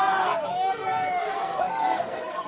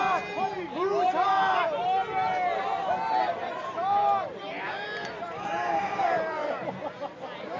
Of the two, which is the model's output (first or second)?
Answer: first